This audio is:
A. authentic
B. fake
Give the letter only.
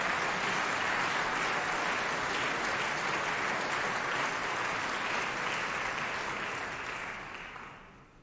A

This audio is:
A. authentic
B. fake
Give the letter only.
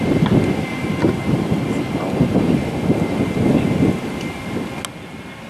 A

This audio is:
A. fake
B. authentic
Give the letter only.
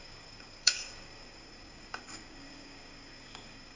A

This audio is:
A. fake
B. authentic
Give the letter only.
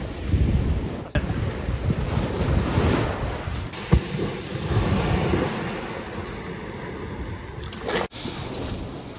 B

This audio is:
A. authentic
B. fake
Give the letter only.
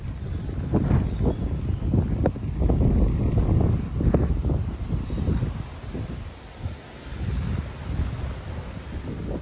A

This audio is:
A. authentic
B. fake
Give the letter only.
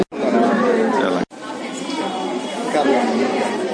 A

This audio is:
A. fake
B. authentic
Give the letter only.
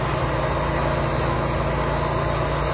B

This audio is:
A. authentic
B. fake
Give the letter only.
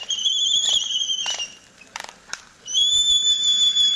B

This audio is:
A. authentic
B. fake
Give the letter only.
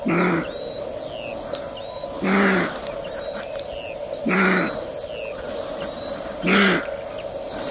A